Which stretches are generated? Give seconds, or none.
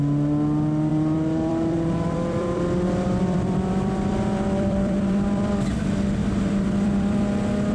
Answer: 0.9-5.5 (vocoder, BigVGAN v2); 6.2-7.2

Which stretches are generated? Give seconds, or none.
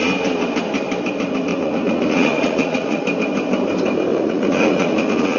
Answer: 1.5-3.0 (vocoder, Vocos); 4.1-5.4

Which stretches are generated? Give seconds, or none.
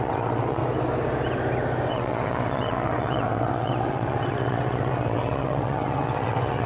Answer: 0.0-0.6 (vocoder, WaveNeXt); 1.9-6.7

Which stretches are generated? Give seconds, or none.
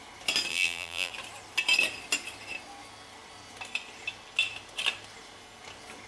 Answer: 0.5-1.1 (vocoder, BigVGAN v2)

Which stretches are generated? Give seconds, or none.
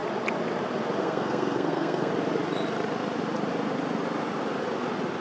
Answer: 1.0-2.1 (codec, SNAC)